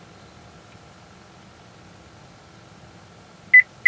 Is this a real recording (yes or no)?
yes